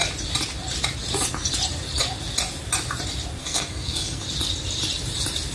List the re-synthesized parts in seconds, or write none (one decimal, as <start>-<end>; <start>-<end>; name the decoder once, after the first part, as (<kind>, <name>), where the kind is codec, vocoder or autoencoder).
3.4-4.2 (codec, SNAC)